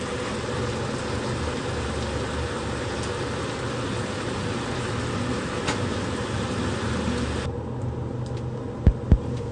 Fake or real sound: real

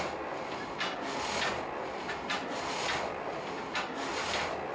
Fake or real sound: real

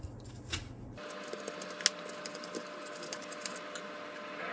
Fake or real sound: real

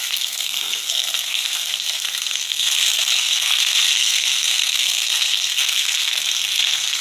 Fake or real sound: fake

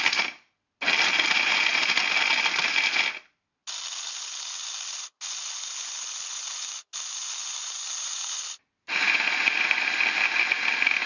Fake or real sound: real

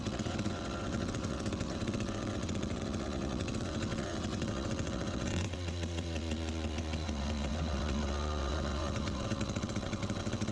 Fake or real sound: fake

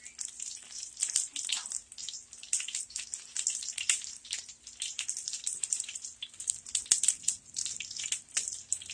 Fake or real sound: real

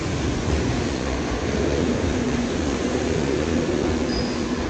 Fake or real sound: fake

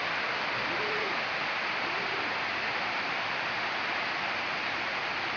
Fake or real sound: real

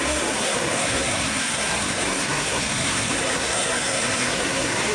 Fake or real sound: fake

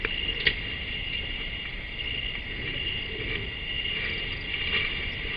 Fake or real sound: real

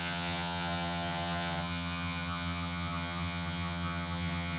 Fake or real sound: fake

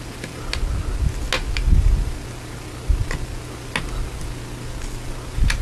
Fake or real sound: real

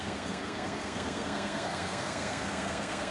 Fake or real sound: fake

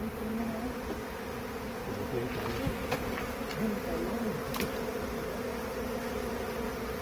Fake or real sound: real